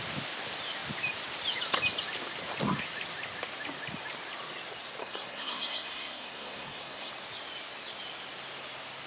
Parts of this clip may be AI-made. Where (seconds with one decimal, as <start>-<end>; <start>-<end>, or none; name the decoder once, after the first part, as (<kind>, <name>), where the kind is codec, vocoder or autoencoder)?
5.0-7.1 (codec, SNAC)